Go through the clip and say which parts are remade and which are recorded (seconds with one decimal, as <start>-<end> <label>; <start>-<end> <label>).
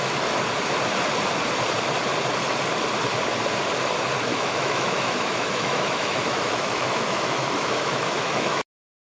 0.0-4.3 recorded; 4.3-8.6 remade; 8.6-9.2 recorded